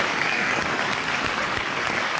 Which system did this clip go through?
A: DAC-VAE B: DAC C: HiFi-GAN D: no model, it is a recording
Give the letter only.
B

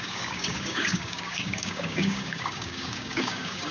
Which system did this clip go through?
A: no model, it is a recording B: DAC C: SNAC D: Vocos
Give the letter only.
B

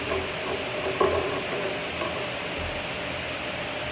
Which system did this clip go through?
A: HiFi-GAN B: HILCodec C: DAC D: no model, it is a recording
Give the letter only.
D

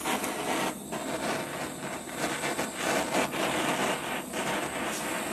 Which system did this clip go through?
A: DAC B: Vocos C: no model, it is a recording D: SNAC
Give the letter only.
C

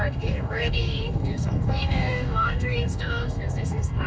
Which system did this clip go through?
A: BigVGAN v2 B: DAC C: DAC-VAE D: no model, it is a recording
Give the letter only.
B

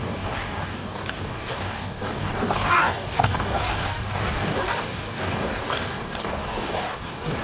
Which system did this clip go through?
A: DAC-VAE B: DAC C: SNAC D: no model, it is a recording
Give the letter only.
B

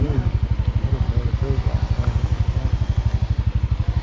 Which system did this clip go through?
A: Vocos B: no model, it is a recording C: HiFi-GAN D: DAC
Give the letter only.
B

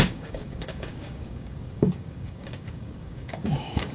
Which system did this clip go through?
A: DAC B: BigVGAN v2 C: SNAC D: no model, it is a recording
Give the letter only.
A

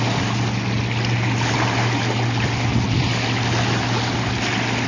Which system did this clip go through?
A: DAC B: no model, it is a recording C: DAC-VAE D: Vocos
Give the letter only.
B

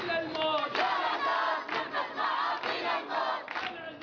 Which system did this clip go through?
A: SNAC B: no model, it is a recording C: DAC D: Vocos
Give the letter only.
B